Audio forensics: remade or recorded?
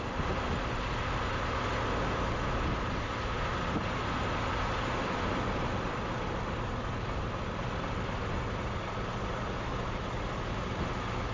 recorded